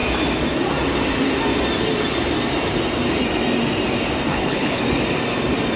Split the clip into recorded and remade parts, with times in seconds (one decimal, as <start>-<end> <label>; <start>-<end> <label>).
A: 0.0-4.3 recorded; 4.3-4.8 remade; 4.8-5.8 recorded